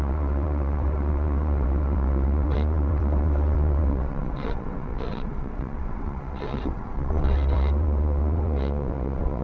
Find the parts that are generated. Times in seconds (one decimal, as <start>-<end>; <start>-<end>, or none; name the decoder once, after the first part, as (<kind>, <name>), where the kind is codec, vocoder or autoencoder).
0.0-9.4 (vocoder, WaveNeXt)